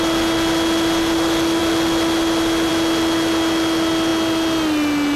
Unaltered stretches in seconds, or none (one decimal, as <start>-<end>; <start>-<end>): 0.0-5.2